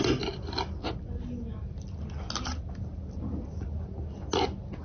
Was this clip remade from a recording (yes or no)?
no